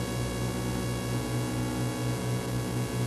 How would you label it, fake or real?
real